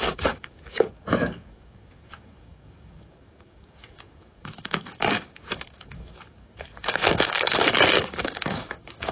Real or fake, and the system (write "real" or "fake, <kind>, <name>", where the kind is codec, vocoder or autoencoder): fake, codec, DAC